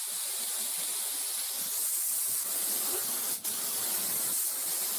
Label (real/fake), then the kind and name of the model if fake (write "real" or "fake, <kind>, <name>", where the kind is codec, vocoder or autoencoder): real